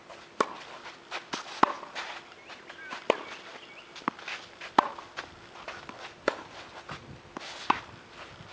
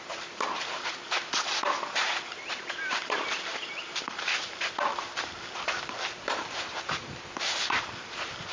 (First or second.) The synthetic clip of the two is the second